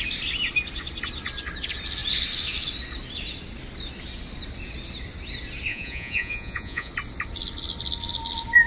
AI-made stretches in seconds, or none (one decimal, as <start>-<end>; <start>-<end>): 5.7-6.9